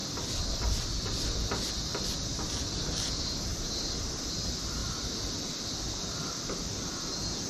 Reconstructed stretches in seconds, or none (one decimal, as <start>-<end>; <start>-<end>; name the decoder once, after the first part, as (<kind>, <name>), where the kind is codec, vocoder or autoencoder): 0.0-1.7 (vocoder, BigVGAN v2); 4.8-6.4